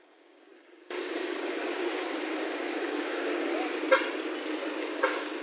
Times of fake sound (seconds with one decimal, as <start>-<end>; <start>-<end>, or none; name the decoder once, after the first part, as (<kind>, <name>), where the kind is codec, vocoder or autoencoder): 0.0-3.5 (codec, DAC); 4.8-5.4